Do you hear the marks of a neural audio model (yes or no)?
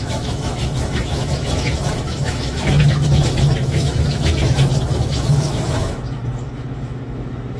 yes